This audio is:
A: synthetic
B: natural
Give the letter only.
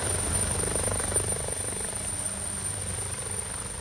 A